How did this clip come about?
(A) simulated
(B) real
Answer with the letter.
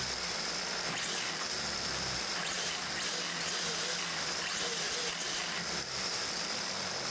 B